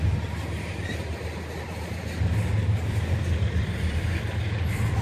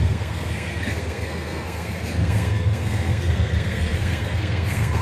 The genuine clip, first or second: first